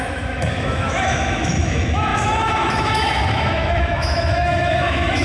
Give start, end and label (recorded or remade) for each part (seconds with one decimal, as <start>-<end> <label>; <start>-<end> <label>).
0.0-5.2 remade